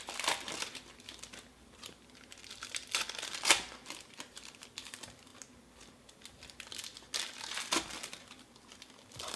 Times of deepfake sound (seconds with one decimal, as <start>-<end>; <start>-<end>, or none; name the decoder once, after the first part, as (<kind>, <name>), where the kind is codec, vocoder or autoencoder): 0.0-5.3 (vocoder, BigVGAN v2); 8.4-9.4

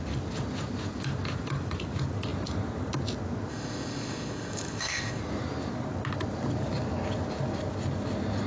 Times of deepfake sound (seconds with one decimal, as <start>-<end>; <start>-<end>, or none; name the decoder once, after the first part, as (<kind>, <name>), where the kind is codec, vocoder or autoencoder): 3.5-5.2 (codec, ZipCodec)

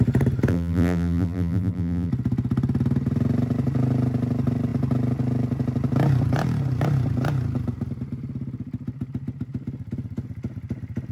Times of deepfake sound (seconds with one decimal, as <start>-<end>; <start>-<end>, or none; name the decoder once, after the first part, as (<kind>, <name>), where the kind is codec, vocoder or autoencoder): 0.5-2.1 (vocoder, BigVGAN v2)

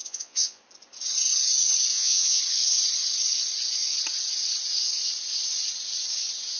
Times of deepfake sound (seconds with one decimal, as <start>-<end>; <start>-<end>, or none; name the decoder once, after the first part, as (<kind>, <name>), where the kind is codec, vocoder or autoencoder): 0.0-0.6 (vocoder, Vocos); 1.9-2.4

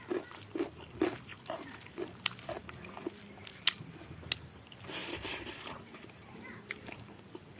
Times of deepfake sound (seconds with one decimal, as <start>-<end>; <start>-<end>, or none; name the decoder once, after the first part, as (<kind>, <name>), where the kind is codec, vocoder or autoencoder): 1.3-2.6 (vocoder, BigVGAN v2); 5.0-7.6